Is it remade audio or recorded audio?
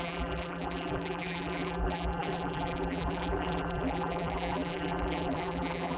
remade